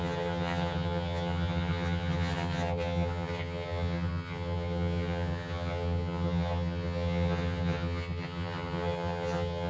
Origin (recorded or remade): remade